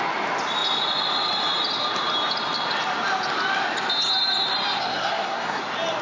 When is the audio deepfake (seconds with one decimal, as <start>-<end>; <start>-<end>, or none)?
4.8-5.6